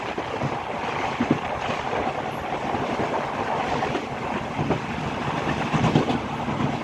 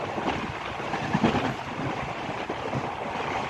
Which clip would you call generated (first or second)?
second